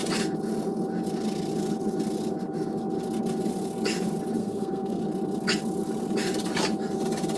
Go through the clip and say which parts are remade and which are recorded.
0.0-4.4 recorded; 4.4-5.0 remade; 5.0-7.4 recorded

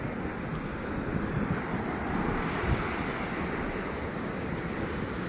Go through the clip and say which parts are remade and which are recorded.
0.0-5.3 recorded

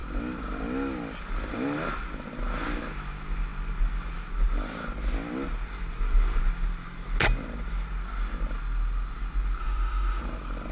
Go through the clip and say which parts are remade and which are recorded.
0.0-9.6 recorded; 9.6-10.2 remade; 10.2-10.7 recorded

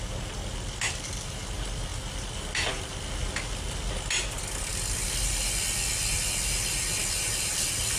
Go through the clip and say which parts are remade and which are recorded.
0.0-8.0 recorded

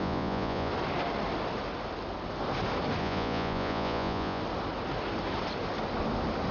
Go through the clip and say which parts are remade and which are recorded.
0.0-0.7 remade; 0.7-3.0 recorded; 3.0-4.4 remade; 4.4-6.5 recorded

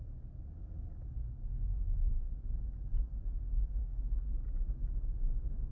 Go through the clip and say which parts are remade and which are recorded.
0.0-1.4 recorded; 1.4-2.1 remade; 2.1-3.8 recorded; 3.8-4.3 remade; 4.3-5.7 recorded